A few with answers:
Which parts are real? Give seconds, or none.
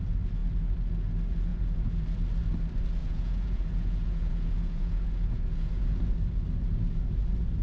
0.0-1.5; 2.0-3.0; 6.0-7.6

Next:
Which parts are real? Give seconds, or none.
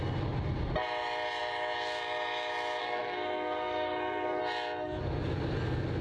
0.0-2.8; 4.4-6.0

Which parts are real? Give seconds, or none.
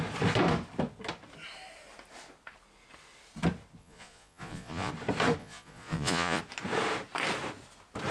0.0-3.8; 4.9-5.4; 6.4-8.1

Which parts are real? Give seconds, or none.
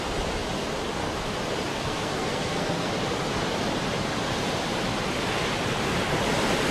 0.0-1.7; 2.9-6.7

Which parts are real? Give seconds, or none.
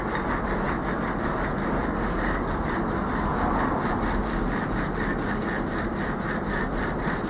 0.0-7.3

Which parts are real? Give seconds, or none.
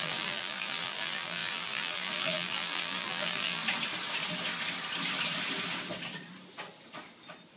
3.6-7.6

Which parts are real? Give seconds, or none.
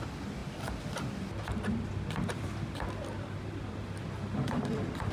0.0-5.1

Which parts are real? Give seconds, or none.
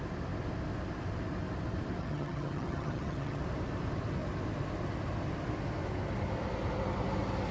0.0-2.0; 3.4-7.5